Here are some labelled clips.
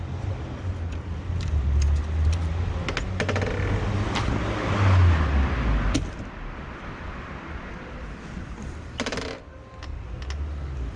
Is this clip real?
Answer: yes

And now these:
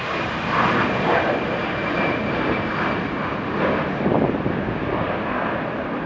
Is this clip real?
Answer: yes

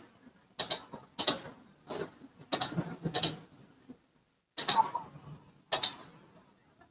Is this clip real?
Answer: yes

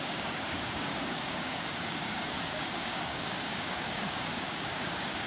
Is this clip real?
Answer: no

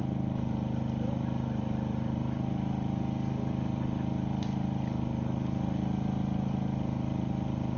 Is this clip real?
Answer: yes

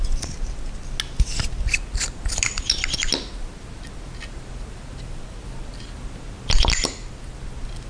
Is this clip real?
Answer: yes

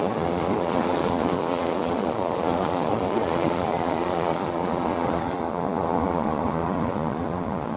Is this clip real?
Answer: no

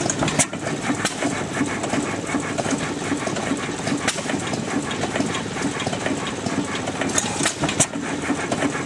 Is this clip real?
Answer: yes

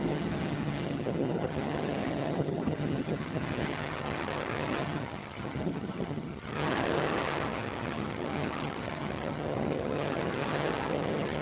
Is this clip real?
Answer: no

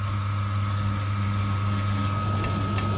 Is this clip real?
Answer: yes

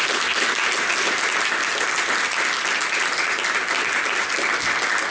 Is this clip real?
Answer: yes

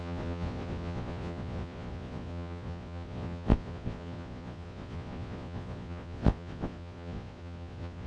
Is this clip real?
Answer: no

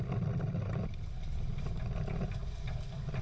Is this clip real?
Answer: yes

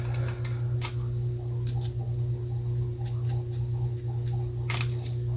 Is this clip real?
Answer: yes